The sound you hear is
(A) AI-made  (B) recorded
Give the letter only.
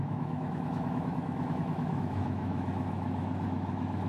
A